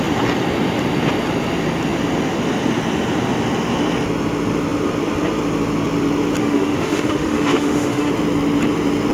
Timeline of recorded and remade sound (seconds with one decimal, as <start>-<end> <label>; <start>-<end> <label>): 0.0-6.4 recorded; 6.4-8.1 remade; 8.1-9.1 recorded

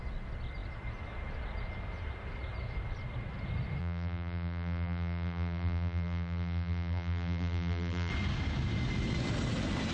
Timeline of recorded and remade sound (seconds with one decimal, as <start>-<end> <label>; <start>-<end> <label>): 0.0-3.8 recorded; 3.8-8.1 remade; 8.1-9.9 recorded

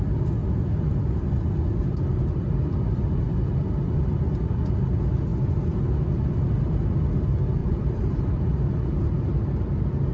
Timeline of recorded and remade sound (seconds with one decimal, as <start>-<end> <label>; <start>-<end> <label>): 0.0-7.6 recorded; 7.6-8.6 remade; 8.6-10.1 recorded

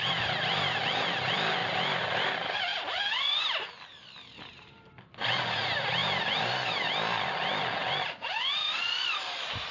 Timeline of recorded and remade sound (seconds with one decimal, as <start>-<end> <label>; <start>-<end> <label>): 0.0-2.7 recorded; 2.7-3.4 remade; 3.4-9.7 recorded

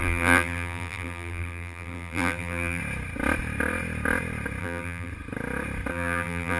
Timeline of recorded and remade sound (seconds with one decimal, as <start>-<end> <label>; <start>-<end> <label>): 0.0-2.8 remade; 2.8-4.6 recorded; 4.6-5.1 remade; 5.1-5.9 recorded; 5.9-6.6 remade

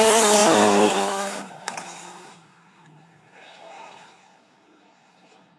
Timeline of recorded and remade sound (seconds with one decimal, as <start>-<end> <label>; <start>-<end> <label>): 0.0-5.6 remade